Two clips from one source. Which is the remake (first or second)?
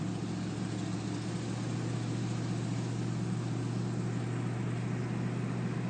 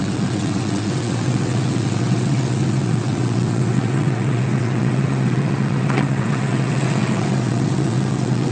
second